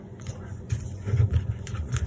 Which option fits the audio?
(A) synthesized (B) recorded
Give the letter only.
A